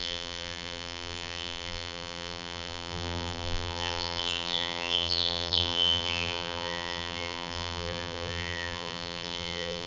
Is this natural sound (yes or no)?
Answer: no